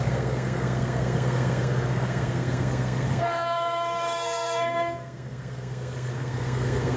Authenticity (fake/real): fake